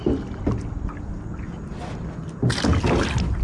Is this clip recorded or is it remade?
recorded